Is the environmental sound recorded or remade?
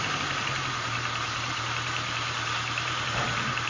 recorded